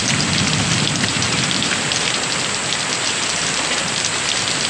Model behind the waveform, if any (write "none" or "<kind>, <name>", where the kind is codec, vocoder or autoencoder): none